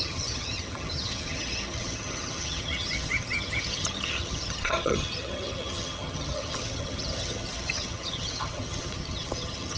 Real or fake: fake